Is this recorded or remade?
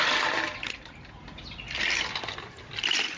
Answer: recorded